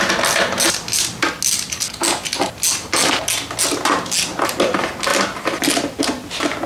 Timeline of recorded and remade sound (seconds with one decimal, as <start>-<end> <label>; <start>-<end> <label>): 0.0-5.1 recorded; 5.1-6.0 remade; 6.0-6.7 recorded